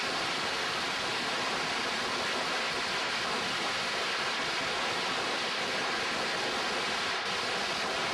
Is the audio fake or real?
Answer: real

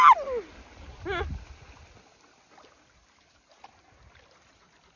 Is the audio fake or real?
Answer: real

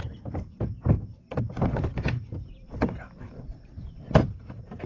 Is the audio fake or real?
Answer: fake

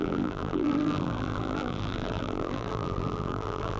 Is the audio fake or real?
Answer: fake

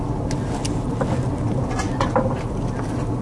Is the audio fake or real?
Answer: real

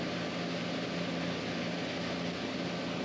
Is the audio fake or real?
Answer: real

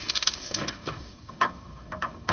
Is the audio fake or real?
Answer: fake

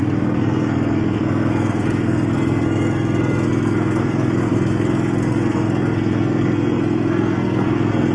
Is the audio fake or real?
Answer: fake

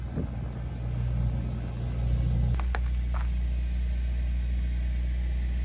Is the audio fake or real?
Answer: real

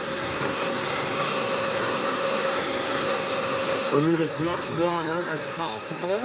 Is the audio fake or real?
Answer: fake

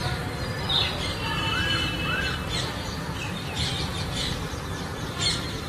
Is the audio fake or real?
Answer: fake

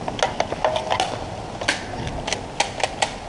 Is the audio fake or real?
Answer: real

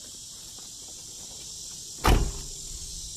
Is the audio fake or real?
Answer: real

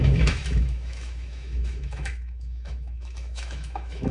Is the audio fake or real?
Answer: fake